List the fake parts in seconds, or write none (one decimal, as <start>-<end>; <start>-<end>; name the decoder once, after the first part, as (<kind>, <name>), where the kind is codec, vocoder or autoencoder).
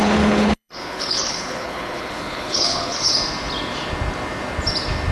0.0-3.1 (codec, HILCodec)